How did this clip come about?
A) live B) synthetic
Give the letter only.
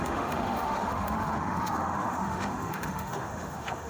B